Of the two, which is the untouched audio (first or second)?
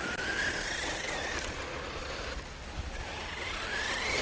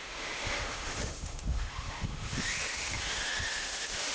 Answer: first